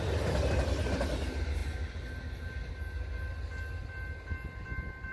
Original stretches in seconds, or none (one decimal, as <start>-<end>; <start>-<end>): 0.0-5.1